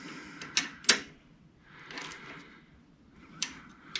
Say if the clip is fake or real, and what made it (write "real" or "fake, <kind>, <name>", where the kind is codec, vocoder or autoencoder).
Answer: real